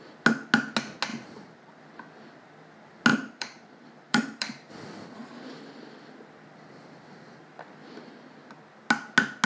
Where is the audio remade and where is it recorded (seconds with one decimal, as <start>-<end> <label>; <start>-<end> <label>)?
0.0-1.1 recorded; 1.1-1.8 remade; 1.8-3.1 recorded; 3.1-4.7 remade; 4.7-9.5 recorded